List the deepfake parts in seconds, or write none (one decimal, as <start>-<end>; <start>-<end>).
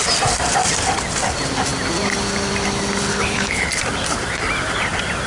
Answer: 3.1-3.7